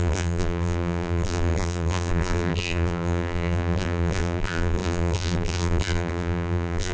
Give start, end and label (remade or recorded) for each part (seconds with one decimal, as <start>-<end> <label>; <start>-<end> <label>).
0.0-6.9 remade